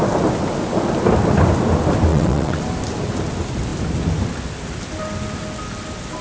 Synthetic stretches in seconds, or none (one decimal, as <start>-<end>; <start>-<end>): 2.1-2.6